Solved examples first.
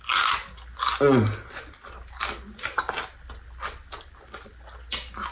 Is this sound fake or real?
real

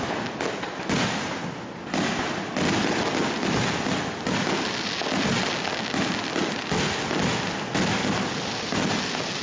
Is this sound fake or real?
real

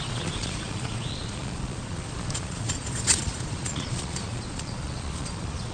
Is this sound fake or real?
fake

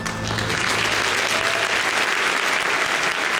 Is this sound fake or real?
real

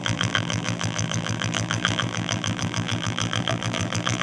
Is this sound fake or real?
fake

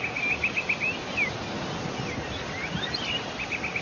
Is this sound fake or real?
real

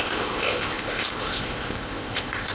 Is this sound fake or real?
fake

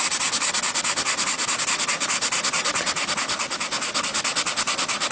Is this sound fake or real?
real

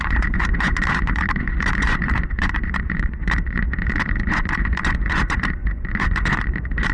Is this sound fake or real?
fake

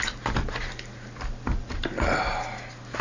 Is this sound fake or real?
real